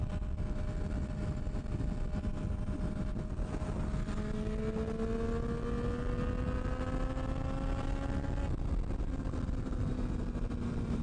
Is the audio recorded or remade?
recorded